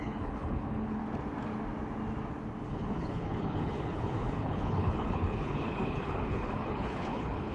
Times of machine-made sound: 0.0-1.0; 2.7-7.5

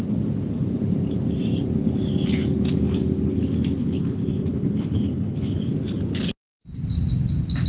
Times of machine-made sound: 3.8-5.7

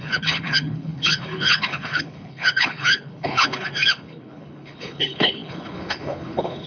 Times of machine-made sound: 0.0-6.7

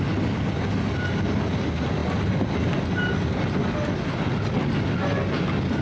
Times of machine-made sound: none

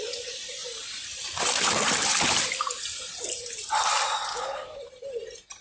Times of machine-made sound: 4.3-4.8

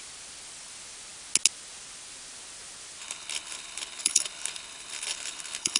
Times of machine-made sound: 3.0-5.8

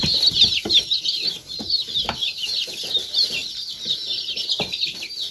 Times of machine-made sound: none